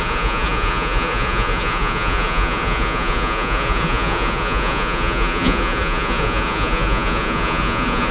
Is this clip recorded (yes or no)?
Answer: no